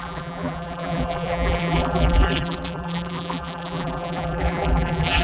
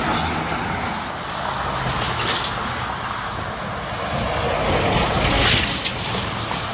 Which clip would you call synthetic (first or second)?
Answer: first